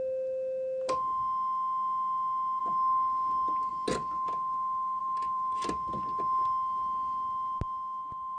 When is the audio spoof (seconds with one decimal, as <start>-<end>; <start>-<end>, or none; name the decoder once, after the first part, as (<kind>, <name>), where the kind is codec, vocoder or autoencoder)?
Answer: 5.0-5.7 (vocoder, BigVGAN v2)